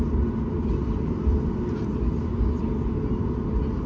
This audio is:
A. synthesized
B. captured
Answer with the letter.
B